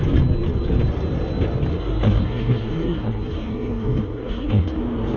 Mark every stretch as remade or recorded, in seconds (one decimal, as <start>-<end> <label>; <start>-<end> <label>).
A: 0.0-1.7 recorded; 1.7-4.8 remade; 4.8-5.2 recorded